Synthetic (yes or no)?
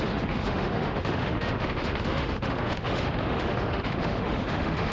yes